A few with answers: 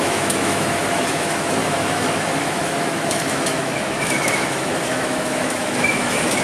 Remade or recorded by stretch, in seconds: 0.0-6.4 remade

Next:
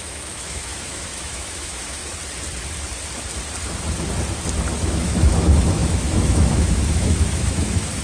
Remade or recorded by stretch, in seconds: 0.0-2.0 remade; 2.0-4.8 recorded; 4.8-8.0 remade

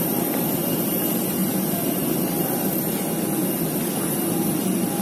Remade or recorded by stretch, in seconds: 0.0-5.0 recorded

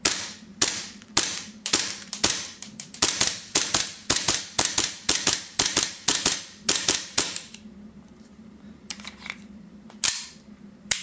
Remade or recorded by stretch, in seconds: 0.0-6.1 remade; 6.1-6.6 recorded; 6.6-11.0 remade

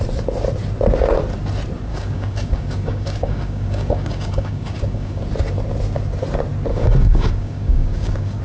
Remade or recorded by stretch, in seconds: 0.0-1.9 recorded; 1.9-5.2 remade; 5.2-6.7 recorded; 6.7-8.4 remade